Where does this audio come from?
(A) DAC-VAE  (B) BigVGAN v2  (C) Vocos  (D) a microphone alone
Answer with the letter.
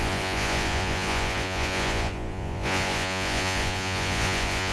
C